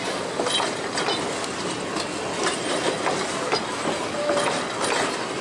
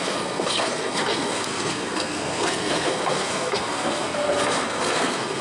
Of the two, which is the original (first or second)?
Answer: first